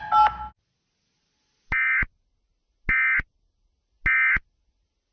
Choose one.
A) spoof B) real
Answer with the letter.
B